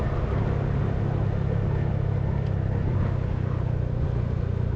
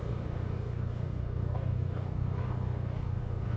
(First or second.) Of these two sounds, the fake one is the second